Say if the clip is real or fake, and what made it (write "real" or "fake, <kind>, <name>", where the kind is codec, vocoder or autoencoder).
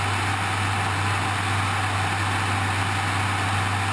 real